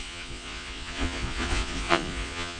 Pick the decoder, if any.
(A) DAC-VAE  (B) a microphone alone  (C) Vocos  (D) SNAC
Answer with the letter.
C